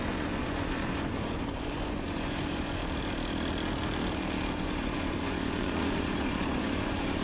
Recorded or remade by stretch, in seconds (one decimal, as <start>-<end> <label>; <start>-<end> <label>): 0.0-2.8 remade; 2.8-4.5 recorded; 4.5-7.2 remade